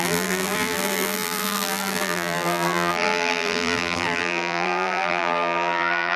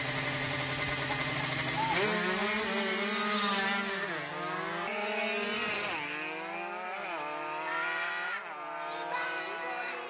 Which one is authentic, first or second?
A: second